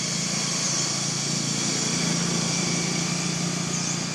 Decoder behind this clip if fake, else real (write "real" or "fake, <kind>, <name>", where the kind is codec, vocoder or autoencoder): real